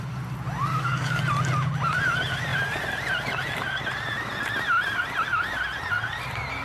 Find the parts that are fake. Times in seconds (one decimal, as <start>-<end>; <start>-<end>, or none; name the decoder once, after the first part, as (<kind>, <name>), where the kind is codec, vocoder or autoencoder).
0.7-1.2 (codec, DAC)